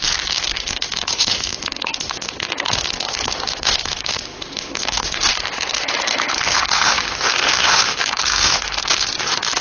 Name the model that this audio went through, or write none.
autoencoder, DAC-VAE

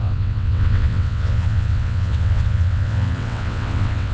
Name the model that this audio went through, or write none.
vocoder, WaveNeXt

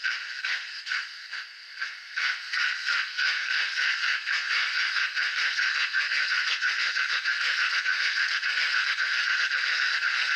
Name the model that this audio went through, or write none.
codec, SNAC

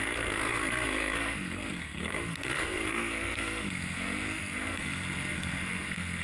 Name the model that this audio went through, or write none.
codec, SNAC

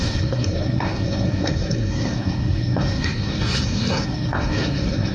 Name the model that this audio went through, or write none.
codec, SNAC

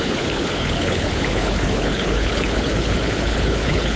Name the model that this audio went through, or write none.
codec, HILCodec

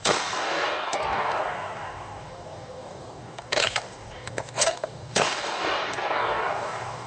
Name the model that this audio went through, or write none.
codec, DAC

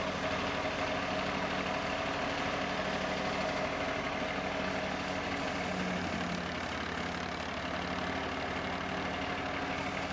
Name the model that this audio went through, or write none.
none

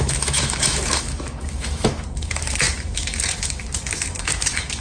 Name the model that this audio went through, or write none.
autoencoder, DAC-VAE